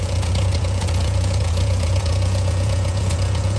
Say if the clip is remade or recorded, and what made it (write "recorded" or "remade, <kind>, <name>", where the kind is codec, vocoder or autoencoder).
remade, vocoder, Vocos